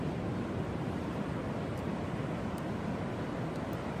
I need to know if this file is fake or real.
real